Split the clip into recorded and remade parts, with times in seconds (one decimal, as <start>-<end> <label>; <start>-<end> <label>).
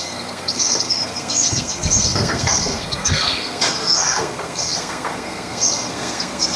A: 0.0-6.6 remade